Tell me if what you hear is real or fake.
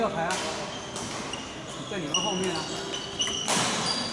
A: real